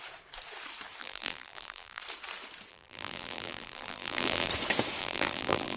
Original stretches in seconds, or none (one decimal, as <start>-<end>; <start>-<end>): 0.0-1.0; 2.0-2.7; 4.5-5.0